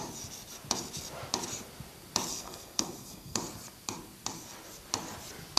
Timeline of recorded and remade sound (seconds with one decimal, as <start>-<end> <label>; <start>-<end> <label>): 0.0-2.3 recorded; 2.3-3.4 remade; 3.4-5.6 recorded